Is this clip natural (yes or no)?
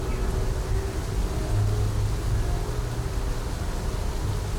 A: yes